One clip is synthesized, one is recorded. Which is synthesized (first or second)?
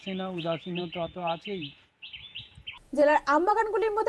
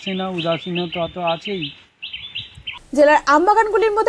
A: first